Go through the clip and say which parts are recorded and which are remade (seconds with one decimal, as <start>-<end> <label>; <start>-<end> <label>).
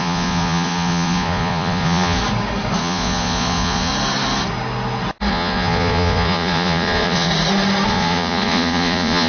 0.0-2.2 remade; 2.2-2.8 recorded; 2.8-3.9 remade; 3.9-5.3 recorded; 5.3-7.3 remade; 7.3-7.9 recorded; 7.9-9.3 remade